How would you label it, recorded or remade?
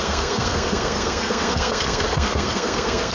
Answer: remade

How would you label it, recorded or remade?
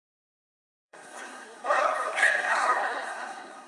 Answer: remade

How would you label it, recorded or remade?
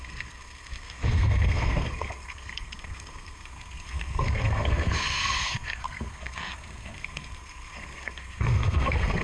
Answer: remade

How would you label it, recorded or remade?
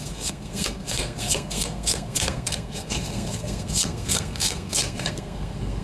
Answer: remade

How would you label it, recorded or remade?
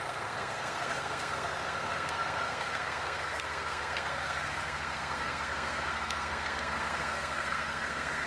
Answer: remade